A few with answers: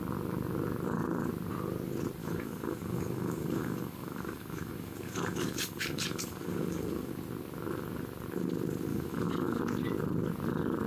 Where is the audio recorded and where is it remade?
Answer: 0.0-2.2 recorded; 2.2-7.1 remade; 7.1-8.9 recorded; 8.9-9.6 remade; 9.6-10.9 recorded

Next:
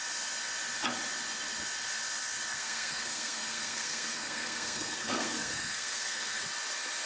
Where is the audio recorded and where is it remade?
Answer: 0.0-2.5 recorded; 2.5-6.4 remade; 6.4-7.1 recorded